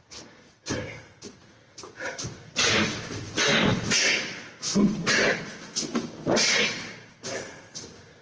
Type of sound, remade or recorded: recorded